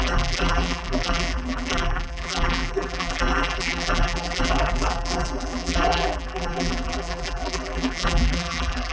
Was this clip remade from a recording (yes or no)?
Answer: yes